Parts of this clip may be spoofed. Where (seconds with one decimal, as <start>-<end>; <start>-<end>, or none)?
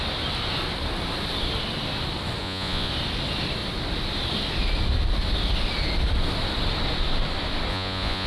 2.4-2.9; 7.7-8.3